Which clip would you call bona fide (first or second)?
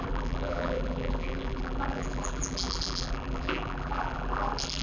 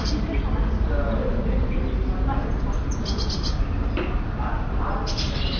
second